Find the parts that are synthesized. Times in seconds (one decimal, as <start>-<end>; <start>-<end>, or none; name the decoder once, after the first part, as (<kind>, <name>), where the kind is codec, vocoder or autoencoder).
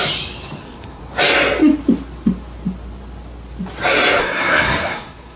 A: 0.6-1.0 (codec, SNAC); 4.2-5.4